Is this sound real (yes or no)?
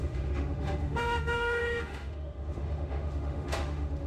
no